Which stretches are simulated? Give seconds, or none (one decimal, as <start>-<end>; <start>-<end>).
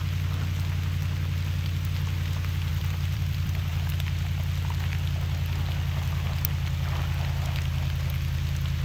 2.7-3.9